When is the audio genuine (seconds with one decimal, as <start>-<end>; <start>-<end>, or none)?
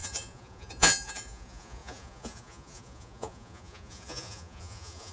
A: none